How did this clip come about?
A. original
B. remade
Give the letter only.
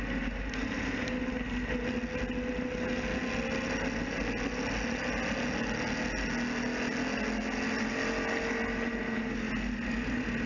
A